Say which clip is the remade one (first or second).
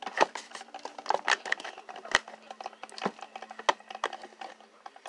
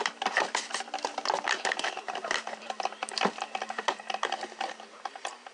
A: second